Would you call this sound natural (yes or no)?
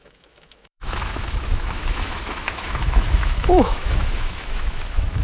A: no